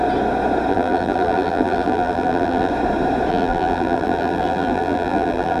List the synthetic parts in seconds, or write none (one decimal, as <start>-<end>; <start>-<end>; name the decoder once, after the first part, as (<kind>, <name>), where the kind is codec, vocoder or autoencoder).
0.7-2.7 (vocoder, BigVGAN v2); 3.3-5.6